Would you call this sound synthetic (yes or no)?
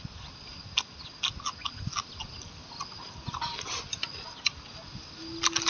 no